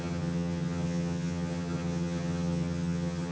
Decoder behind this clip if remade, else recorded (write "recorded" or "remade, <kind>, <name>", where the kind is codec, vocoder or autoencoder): remade, vocoder, HiFi-GAN